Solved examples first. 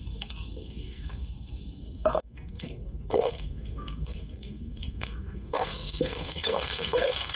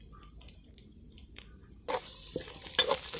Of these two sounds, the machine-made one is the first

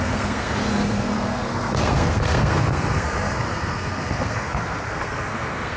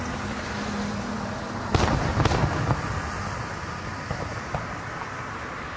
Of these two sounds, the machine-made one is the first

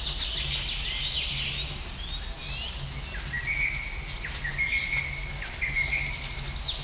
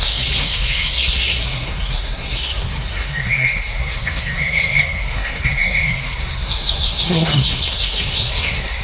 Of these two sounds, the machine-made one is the second